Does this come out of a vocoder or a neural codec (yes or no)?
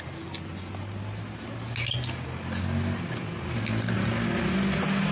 no